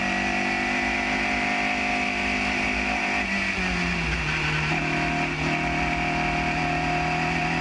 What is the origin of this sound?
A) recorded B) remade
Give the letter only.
A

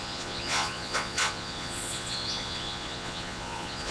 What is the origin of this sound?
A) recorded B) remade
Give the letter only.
B